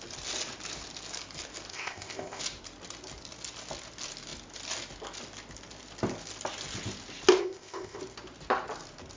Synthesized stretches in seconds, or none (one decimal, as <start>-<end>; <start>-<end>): 1.7-2.4; 7.4-8.0

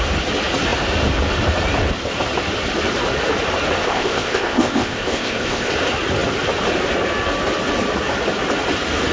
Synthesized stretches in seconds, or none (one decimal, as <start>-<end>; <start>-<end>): 3.8-5.7

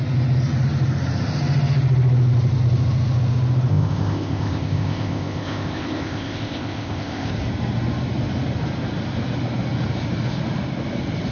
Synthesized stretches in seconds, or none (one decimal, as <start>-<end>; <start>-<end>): 3.7-7.3

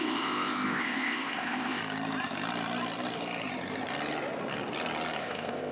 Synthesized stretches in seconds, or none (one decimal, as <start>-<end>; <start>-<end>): 0.0-1.8; 5.2-5.7

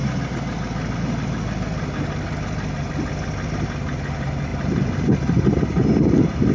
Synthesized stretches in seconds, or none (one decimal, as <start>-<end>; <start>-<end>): none

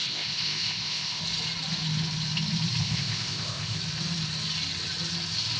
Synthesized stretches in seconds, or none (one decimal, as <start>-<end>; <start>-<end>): 0.0-1.2; 2.8-3.8

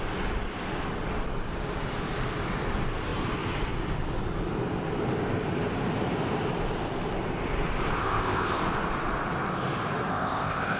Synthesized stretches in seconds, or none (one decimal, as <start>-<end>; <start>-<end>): 8.0-8.6; 10.1-10.8